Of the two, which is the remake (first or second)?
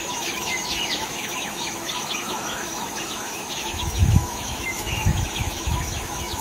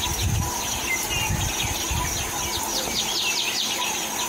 first